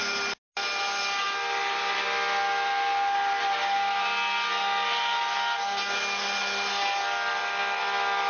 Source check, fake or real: real